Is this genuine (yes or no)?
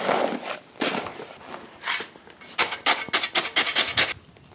yes